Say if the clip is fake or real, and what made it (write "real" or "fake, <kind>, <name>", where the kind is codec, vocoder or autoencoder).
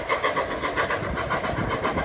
real